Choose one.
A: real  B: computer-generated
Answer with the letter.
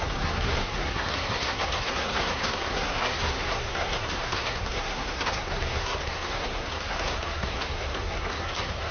B